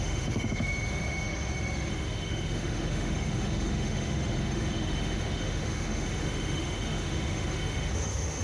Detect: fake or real fake